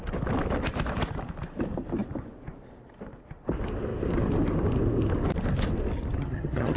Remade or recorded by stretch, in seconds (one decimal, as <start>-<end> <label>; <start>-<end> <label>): 0.0-6.2 recorded; 6.2-6.8 remade